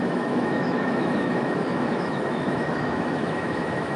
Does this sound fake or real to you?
fake